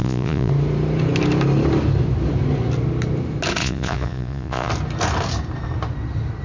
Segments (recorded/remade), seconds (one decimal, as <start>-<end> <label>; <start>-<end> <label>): 0.0-0.5 remade; 0.5-3.6 recorded; 3.6-4.7 remade; 4.7-6.4 recorded